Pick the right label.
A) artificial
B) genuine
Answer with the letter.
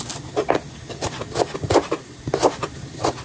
B